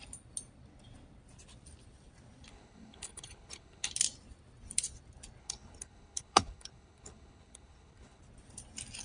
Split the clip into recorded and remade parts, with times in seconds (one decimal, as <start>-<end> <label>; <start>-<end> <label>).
0.0-2.5 recorded; 2.5-3.9 remade; 3.9-5.4 recorded; 5.4-8.2 remade; 8.2-9.0 recorded